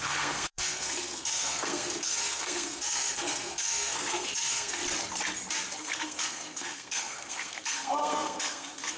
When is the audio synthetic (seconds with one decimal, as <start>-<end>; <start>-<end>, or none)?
0.0-4.8; 5.8-9.0